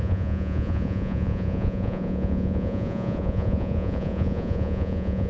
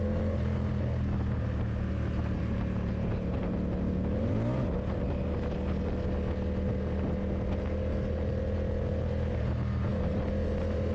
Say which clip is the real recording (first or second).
second